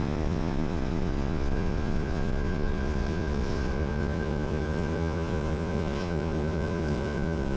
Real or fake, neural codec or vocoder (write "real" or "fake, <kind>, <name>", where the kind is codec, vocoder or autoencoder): fake, vocoder, Vocos